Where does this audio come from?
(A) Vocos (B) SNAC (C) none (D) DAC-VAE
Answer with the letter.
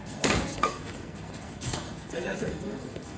B